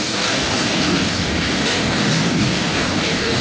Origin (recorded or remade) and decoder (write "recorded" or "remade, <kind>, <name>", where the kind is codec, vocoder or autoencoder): remade, codec, DAC